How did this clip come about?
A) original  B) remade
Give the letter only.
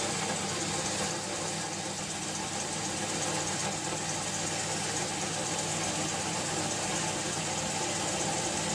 A